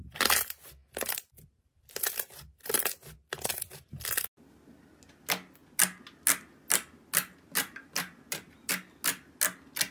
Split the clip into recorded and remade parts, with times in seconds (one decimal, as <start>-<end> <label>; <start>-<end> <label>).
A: 0.0-9.9 recorded